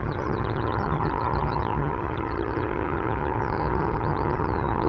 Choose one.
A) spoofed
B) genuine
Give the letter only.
A